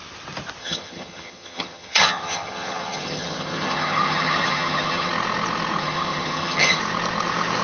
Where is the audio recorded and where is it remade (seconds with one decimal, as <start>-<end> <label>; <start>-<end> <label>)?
0.0-0.6 recorded; 0.6-5.1 remade; 5.1-5.8 recorded; 5.8-6.8 remade; 6.8-7.6 recorded